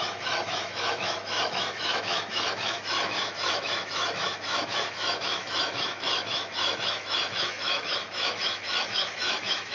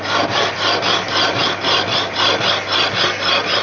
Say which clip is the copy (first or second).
first